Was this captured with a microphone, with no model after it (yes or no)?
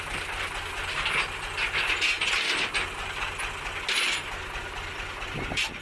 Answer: yes